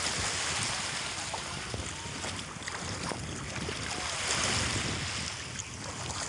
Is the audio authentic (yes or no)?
yes